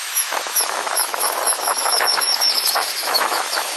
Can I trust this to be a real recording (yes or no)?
no